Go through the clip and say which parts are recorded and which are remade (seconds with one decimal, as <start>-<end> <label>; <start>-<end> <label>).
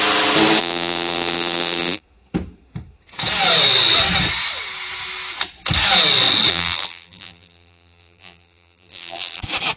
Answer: 0.0-0.6 recorded; 0.6-2.0 remade; 2.0-6.5 recorded; 6.5-9.4 remade; 9.4-9.8 recorded